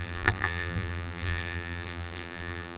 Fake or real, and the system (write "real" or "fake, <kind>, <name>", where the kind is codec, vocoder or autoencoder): fake, vocoder, BigVGAN v2